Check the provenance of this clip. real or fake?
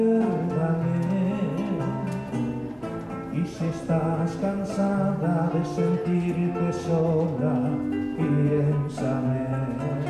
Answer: real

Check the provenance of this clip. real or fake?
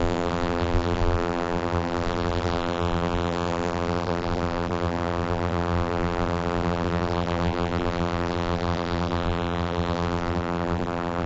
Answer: fake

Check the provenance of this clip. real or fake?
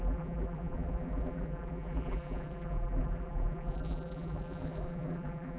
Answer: fake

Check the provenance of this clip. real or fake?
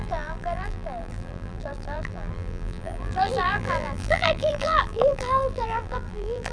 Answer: fake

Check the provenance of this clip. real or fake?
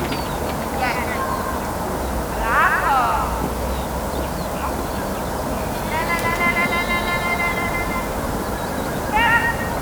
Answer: real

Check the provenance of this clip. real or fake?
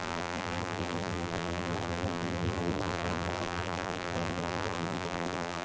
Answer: fake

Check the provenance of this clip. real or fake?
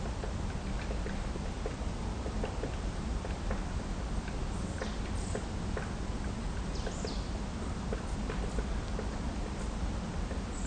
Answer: real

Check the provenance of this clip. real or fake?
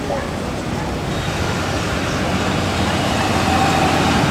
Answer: real